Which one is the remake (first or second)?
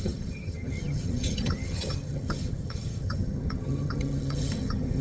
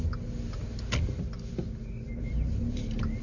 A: first